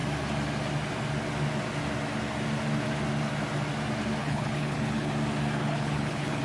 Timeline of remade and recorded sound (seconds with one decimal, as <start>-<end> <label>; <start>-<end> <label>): 0.0-4.2 recorded; 4.2-5.1 remade; 5.1-5.6 recorded; 5.6-6.4 remade